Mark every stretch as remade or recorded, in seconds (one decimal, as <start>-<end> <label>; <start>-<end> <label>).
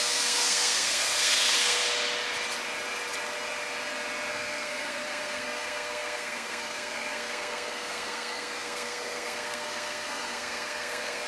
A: 0.0-1.8 remade; 1.8-4.3 recorded; 4.3-11.3 remade